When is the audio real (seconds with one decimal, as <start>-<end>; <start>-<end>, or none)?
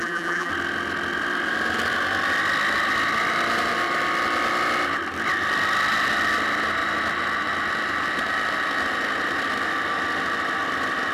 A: 0.5-11.1